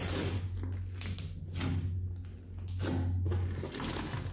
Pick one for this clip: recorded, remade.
recorded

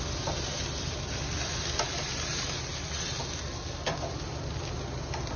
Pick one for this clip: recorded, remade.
recorded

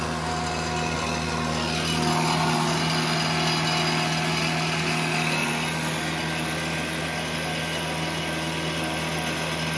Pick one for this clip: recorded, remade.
recorded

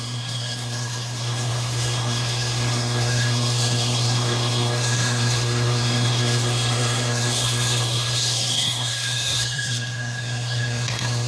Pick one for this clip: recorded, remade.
remade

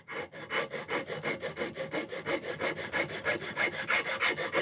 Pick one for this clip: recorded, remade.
recorded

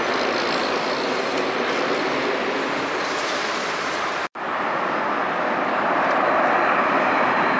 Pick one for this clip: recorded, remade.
recorded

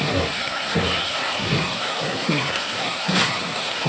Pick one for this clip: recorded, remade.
remade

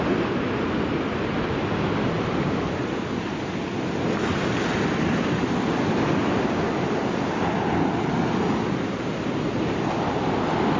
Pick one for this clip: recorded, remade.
recorded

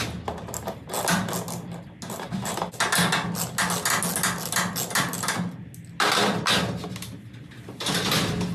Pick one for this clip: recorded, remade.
recorded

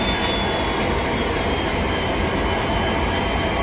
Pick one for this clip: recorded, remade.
recorded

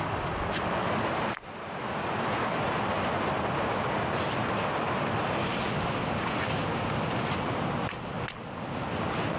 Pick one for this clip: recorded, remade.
recorded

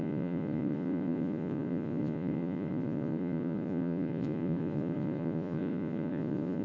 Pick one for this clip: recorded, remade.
remade